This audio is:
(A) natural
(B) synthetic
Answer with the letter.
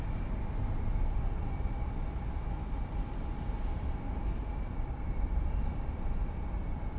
A